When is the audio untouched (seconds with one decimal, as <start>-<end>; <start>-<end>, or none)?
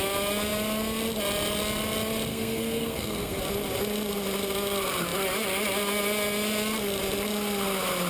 0.0-2.3; 3.4-8.1